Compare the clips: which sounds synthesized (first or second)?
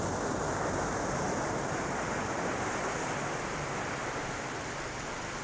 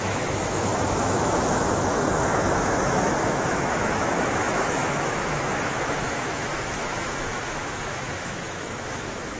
second